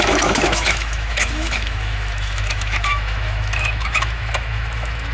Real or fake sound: fake